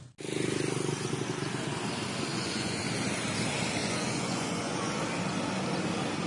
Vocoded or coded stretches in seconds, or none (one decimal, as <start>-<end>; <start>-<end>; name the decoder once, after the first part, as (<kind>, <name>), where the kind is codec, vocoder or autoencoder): 2.3-2.8 (vocoder, Vocos); 3.8-5.0